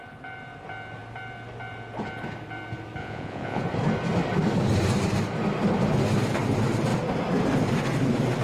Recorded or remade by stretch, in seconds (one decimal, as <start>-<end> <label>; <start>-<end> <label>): 0.0-3.0 recorded; 3.0-3.6 remade; 3.6-8.4 recorded